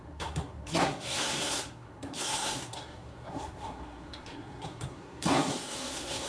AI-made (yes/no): yes